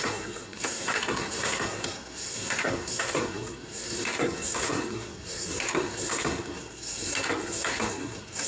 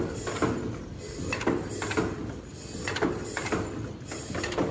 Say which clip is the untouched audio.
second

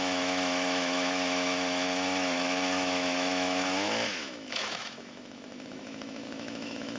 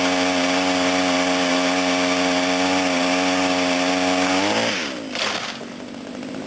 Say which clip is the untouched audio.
second